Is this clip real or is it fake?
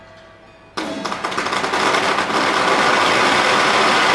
real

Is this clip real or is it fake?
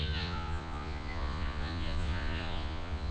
fake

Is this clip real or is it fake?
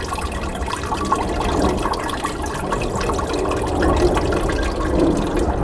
real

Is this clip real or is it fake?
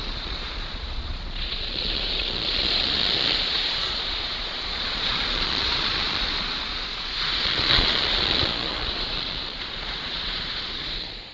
fake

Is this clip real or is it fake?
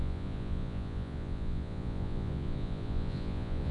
fake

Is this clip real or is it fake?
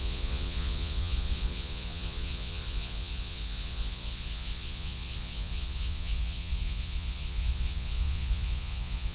fake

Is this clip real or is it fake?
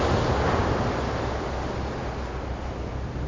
real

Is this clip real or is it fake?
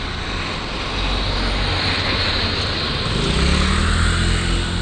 real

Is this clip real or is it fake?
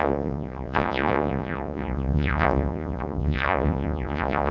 fake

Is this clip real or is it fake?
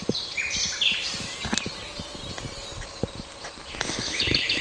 real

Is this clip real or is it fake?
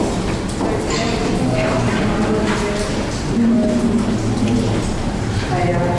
real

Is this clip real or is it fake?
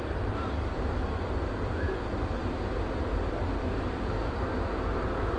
real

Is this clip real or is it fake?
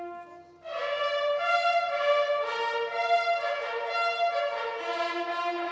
real